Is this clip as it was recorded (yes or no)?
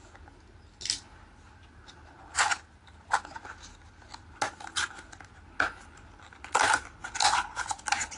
yes